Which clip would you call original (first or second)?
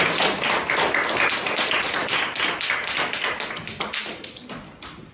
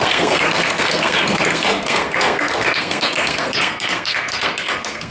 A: first